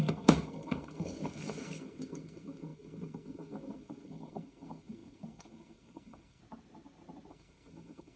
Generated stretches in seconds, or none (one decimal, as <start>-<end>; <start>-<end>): 0.0-6.4; 7.3-8.2